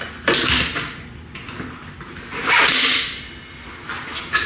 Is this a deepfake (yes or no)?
no